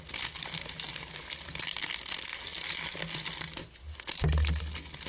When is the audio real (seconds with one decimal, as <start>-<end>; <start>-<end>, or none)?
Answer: 0.0-5.1